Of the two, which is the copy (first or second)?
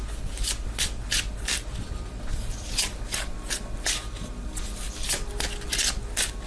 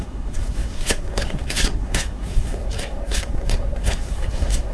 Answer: second